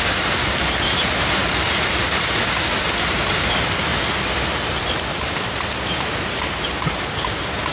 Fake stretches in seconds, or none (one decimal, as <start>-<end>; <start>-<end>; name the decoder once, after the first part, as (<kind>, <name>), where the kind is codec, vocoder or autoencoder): 0.0-1.4 (vocoder, BigVGAN v2); 3.3-3.9; 4.7-7.7